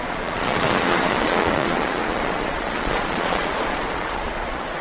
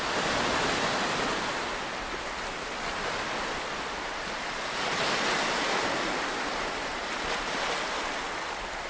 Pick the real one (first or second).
second